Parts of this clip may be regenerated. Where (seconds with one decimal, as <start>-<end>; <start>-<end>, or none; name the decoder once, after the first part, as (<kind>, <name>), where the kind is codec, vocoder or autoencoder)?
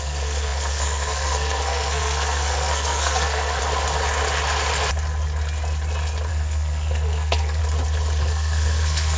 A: 0.0-3.6 (codec, SNAC); 6.3-7.6; 8.2-9.2